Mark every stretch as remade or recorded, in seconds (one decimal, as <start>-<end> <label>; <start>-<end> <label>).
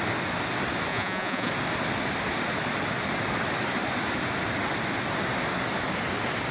0.0-0.9 recorded; 0.9-1.5 remade; 1.5-6.5 recorded